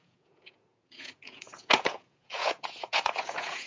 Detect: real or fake fake